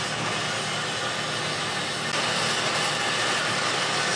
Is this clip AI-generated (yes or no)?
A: no